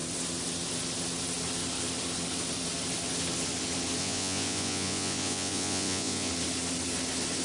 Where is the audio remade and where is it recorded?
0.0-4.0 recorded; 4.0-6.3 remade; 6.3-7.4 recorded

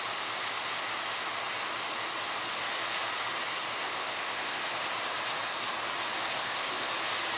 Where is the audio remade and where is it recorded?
0.0-3.8 recorded; 3.8-4.6 remade; 4.6-6.3 recorded; 6.3-6.9 remade; 6.9-7.4 recorded